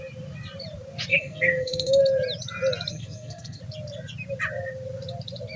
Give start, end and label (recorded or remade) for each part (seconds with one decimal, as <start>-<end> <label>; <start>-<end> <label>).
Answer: 0.0-1.1 recorded; 1.1-2.0 remade; 2.0-2.9 recorded; 2.9-3.6 remade; 3.6-5.6 recorded